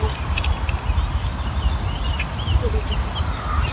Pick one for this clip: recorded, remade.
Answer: recorded